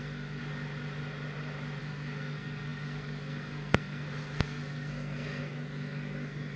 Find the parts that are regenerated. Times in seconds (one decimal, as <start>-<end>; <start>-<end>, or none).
0.0-0.4; 1.8-6.6